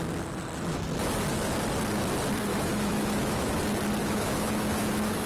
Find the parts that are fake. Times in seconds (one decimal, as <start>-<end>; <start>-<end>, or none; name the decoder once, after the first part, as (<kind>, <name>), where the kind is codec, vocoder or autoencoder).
2.5-3.6 (autoencoder, DAC-VAE); 4.0-5.3